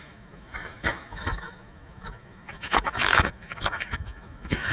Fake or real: fake